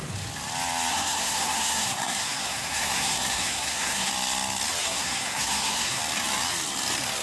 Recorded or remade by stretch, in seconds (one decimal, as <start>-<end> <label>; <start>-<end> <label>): 0.0-0.9 recorded; 0.9-4.1 remade; 4.1-4.8 recorded; 4.8-6.0 remade; 6.0-7.2 recorded